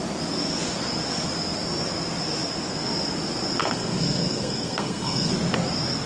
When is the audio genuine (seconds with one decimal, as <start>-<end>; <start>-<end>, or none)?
0.0-3.6; 5.3-6.1